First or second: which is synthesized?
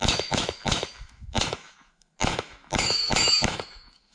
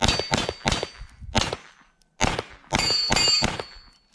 first